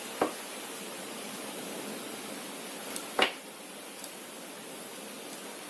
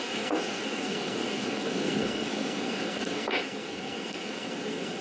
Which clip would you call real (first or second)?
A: first